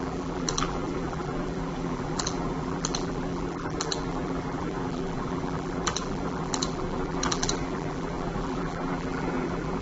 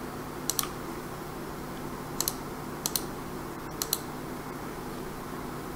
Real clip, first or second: second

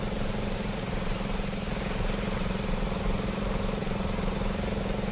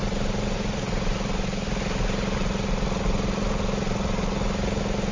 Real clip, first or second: second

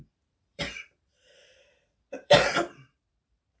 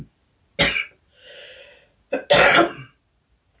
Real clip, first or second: second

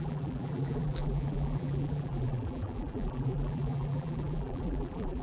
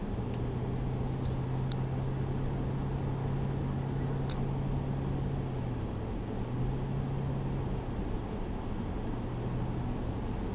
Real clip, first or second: second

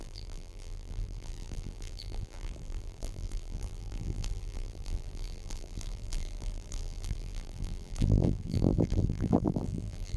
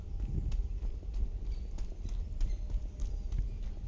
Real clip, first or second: second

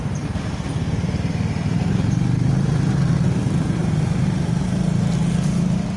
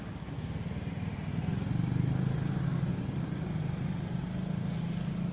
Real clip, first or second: second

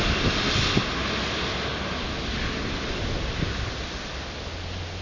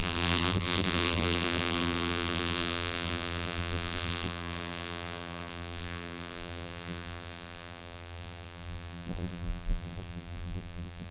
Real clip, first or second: first